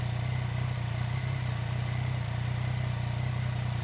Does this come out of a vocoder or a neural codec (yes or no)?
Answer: no